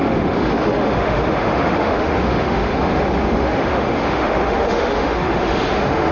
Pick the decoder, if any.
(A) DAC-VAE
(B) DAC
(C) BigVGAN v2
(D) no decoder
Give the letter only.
A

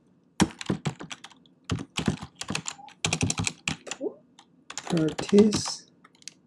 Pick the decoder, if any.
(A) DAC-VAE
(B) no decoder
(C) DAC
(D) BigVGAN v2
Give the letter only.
B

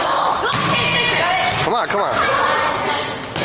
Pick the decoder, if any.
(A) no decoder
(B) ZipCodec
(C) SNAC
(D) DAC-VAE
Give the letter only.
A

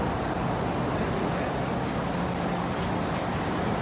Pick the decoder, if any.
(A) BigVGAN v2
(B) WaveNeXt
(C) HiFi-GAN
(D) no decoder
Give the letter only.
D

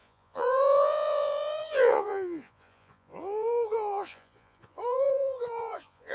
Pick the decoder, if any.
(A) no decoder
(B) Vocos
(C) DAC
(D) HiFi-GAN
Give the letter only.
B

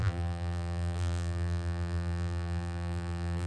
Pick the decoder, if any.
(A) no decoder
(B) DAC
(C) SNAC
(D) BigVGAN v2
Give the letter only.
D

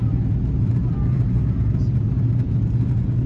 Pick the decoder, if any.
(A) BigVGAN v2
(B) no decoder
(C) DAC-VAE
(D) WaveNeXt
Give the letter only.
B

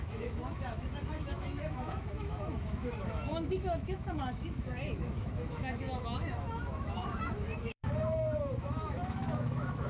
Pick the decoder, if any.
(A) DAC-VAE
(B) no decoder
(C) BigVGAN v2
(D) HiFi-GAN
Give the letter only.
A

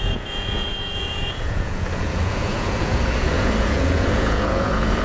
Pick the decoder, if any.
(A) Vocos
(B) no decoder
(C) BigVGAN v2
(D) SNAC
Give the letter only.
A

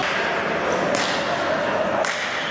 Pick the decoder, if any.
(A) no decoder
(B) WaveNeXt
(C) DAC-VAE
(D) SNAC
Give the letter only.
A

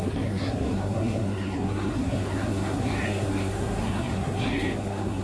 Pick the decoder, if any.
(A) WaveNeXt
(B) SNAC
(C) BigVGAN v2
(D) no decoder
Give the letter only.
B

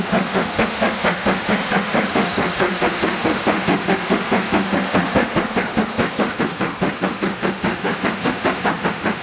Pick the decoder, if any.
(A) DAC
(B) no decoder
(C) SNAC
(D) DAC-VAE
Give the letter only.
D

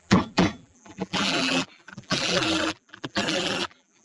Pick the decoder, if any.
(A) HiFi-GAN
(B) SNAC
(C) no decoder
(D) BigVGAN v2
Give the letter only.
D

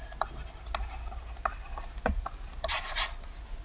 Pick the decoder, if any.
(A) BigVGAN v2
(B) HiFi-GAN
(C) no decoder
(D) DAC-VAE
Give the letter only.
C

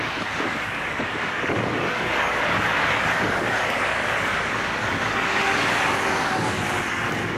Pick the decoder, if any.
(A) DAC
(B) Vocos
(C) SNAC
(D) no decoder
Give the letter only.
A